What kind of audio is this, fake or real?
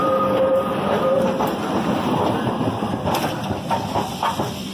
real